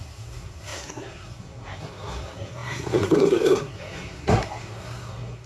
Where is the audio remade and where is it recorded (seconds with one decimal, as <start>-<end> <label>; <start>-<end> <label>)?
0.0-5.5 remade